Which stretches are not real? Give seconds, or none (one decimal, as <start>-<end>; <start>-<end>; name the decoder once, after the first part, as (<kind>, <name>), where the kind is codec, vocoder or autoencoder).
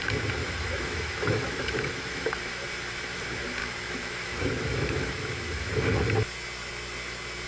0.4-2.4 (autoencoder, DAC-VAE); 3.6-5.8